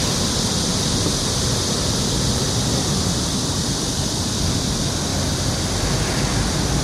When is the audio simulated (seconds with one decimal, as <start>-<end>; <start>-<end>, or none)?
4.1-6.8